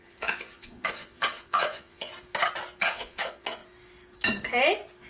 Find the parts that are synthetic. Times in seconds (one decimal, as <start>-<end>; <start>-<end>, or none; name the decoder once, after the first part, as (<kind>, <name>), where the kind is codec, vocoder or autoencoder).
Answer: 0.0-2.1 (vocoder, Vocos); 2.8-3.6